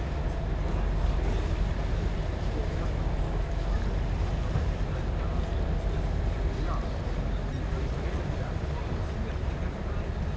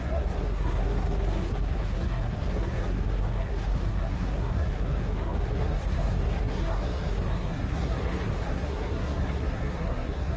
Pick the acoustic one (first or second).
first